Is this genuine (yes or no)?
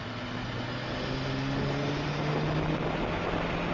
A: yes